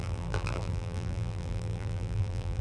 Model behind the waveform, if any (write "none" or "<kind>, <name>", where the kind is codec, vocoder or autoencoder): vocoder, BigVGAN v2